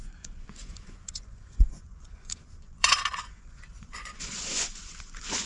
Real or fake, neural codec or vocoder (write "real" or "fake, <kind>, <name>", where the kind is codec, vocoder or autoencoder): fake, vocoder, Vocos